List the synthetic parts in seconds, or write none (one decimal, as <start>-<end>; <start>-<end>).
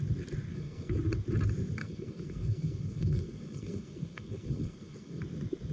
0.5-1.0; 1.8-5.2